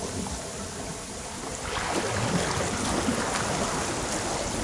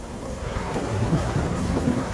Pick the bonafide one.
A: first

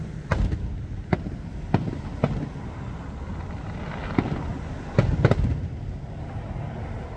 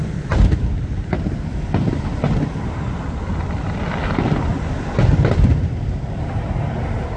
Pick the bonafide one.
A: first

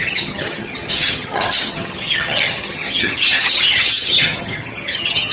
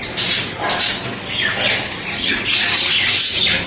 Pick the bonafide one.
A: second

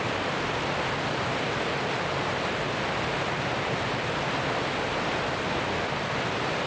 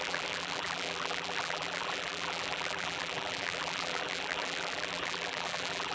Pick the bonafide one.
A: first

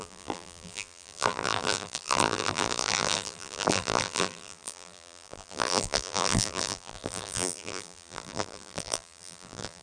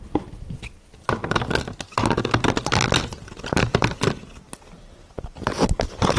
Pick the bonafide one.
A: second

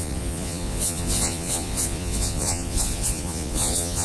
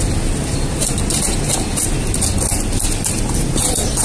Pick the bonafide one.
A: second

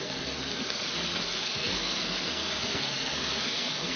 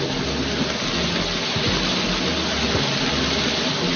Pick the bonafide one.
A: second